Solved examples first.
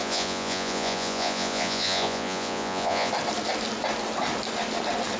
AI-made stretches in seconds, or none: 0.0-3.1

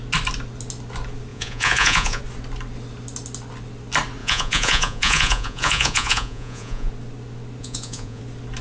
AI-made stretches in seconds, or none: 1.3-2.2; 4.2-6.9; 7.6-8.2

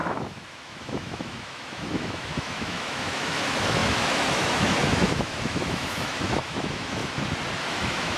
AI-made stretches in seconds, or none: 0.0-7.0; 7.6-8.2